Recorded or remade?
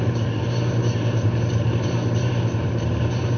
remade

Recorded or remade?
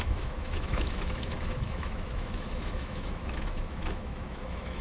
remade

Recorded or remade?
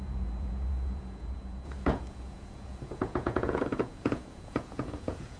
remade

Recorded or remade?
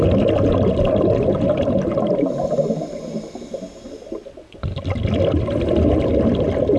recorded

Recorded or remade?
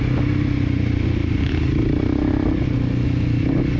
recorded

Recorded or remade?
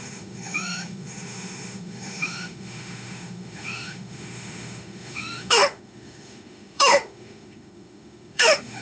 remade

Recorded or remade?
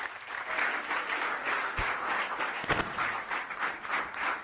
recorded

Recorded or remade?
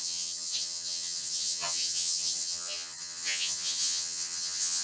remade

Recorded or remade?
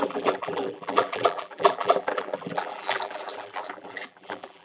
remade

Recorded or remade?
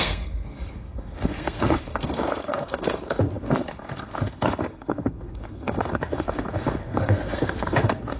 remade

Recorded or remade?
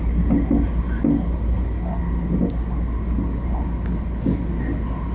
recorded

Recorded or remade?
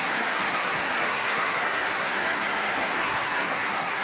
remade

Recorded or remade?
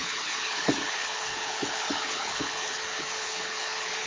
remade